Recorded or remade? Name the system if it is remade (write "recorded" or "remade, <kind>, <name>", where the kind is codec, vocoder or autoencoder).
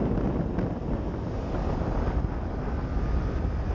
recorded